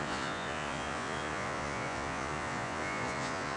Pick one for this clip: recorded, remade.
remade